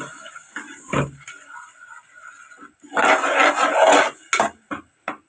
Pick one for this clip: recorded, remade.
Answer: recorded